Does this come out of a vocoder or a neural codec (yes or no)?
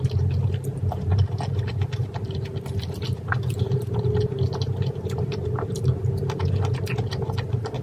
no